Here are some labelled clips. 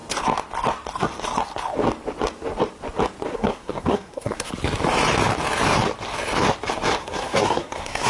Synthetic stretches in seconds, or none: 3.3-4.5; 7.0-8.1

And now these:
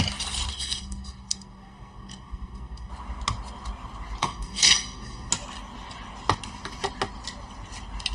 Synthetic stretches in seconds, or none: 0.5-2.9; 4.2-5.3

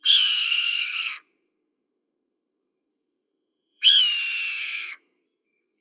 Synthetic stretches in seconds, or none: 0.0-4.0; 4.6-5.8

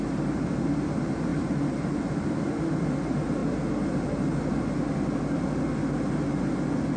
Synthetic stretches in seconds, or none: none

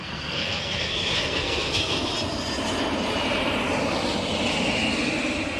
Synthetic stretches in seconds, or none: 0.0-2.1